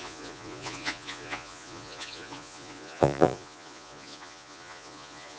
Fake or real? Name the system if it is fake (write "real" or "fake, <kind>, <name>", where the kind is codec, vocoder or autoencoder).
fake, vocoder, Vocos